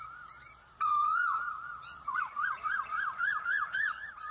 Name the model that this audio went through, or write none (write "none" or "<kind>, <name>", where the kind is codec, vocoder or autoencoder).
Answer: vocoder, Vocos